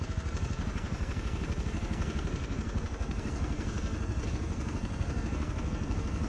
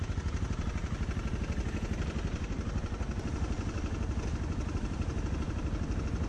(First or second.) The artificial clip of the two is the first